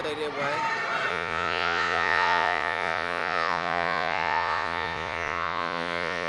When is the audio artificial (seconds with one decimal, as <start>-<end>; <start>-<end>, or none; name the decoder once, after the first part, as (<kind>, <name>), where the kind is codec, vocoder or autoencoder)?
1.1-6.3 (vocoder, Vocos)